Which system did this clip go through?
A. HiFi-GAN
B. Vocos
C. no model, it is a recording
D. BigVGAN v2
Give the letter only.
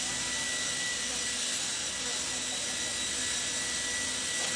C